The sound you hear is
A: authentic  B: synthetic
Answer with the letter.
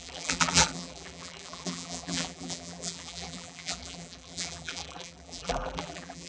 B